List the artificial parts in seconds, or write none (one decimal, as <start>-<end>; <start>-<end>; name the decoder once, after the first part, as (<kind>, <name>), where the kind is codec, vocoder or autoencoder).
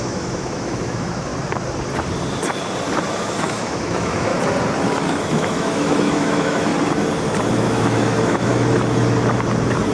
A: 0.0-1.3 (autoencoder, DAC-VAE); 3.1-4.3; 5.2-6.7; 7.5-8.5